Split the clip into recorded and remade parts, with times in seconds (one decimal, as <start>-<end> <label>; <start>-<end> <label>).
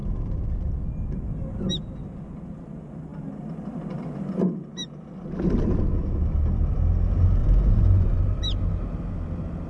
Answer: 0.0-7.4 recorded; 7.4-8.2 remade; 8.2-9.7 recorded